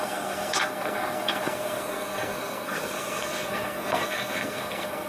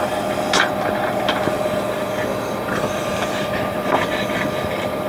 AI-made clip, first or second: first